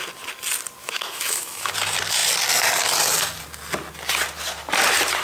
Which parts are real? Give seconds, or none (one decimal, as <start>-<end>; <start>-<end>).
0.0-0.8; 1.7-5.2